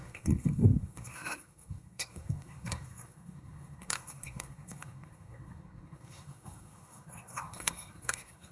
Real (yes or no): no